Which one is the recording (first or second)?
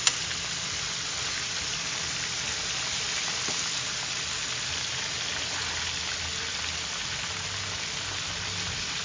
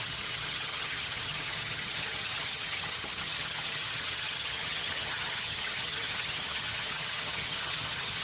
first